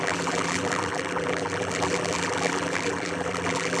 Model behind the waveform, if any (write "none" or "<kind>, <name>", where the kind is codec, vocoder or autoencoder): vocoder, BigVGAN v2